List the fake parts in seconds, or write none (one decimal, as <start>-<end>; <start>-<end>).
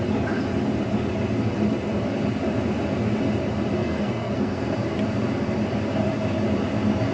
3.8-4.7